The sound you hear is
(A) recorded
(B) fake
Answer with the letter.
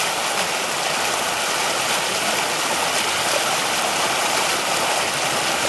A